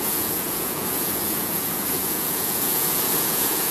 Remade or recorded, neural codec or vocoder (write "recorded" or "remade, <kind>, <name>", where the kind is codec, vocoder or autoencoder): remade, vocoder, Vocos